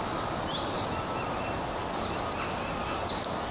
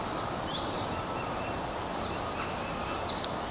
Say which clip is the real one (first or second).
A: first